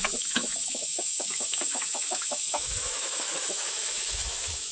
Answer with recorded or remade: remade